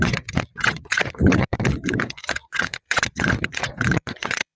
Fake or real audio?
fake